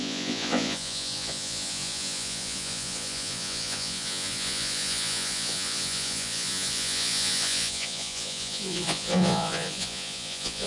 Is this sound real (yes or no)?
no